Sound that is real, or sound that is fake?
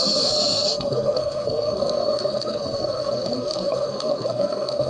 fake